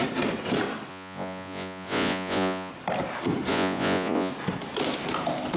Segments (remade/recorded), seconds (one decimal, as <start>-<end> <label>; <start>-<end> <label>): 0.0-0.9 recorded; 0.9-2.7 remade; 2.7-3.5 recorded; 3.5-4.3 remade; 4.3-5.6 recorded